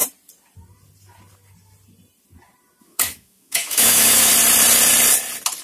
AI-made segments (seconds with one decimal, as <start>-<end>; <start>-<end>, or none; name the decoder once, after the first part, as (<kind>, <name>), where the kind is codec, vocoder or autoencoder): 2.8-4.3 (autoencoder, DAC-VAE)